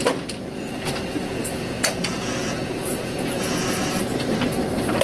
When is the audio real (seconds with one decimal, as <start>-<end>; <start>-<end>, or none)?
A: 0.0-1.1; 3.8-5.0